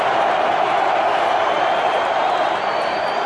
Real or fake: fake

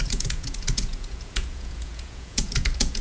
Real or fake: fake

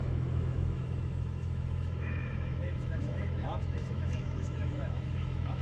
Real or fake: fake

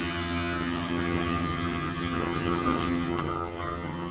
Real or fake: fake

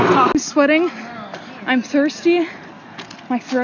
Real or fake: real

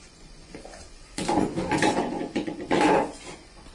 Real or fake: fake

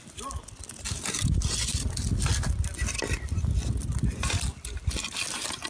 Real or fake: real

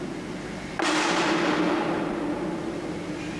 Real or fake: real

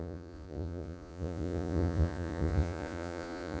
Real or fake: fake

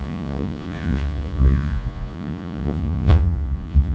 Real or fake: fake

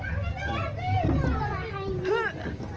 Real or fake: real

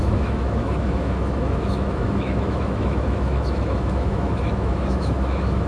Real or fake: fake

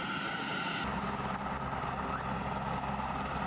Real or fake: real